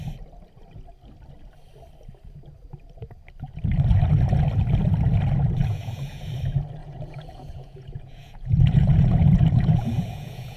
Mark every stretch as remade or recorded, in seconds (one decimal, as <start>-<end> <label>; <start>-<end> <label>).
0.0-5.6 recorded; 5.6-6.3 remade; 6.3-6.8 recorded; 6.8-10.6 remade